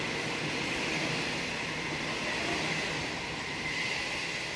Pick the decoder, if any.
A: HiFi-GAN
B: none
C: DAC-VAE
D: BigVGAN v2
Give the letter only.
B